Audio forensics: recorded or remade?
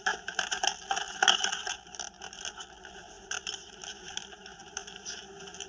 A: remade